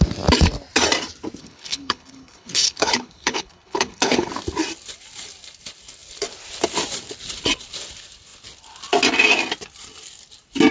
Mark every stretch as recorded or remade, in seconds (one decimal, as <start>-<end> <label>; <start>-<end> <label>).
0.0-1.4 recorded; 1.4-4.3 remade; 4.3-10.7 recorded